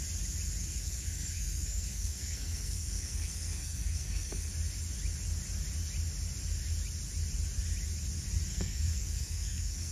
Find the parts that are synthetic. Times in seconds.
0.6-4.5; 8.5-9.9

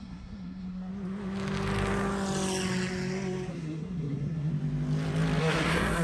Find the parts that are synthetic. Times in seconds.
0.0-0.9; 3.5-4.5; 5.4-6.0

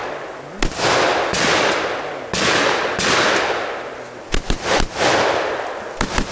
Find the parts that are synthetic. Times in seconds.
none

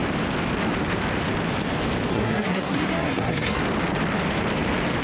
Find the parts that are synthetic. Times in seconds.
2.1-3.6

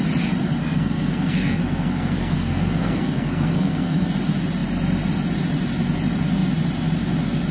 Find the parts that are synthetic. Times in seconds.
0.6-4.1

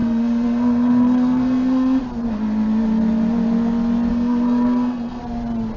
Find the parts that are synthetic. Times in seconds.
0.0-2.0; 4.1-5.2

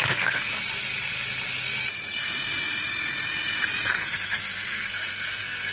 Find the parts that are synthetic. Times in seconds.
0.0-0.5; 3.9-5.7

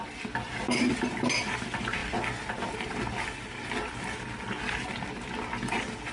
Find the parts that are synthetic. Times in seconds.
none